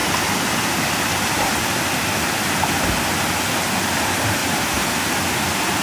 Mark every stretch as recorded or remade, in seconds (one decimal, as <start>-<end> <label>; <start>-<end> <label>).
0.0-3.5 remade; 3.5-4.4 recorded; 4.4-4.9 remade; 4.9-5.8 recorded